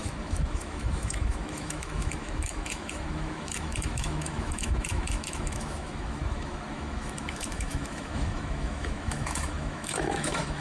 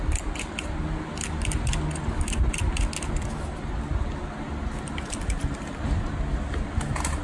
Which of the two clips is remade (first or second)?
first